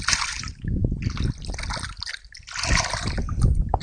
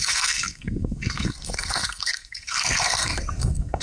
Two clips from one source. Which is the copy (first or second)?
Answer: second